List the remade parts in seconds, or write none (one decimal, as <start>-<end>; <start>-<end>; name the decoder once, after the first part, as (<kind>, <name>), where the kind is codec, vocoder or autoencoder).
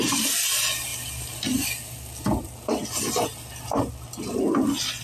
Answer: none